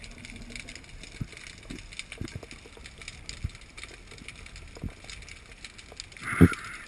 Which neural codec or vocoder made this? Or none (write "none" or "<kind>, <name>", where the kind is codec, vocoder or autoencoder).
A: none